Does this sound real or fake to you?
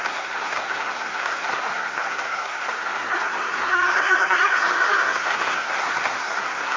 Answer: fake